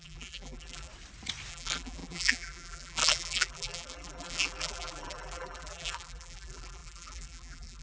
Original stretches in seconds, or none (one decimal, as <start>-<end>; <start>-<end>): 0.9-1.5